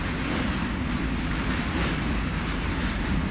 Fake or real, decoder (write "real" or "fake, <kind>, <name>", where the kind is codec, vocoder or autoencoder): real